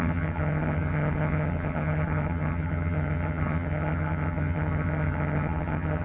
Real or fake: fake